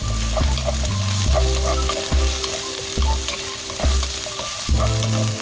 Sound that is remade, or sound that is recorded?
recorded